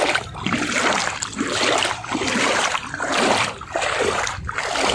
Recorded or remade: remade